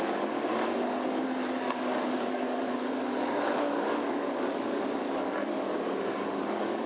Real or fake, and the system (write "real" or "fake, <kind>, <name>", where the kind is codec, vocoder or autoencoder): fake, codec, DAC